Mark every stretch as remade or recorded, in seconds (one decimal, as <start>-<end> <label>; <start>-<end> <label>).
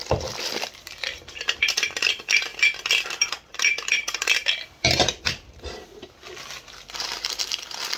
0.0-2.5 remade; 2.5-5.2 recorded; 5.2-8.0 remade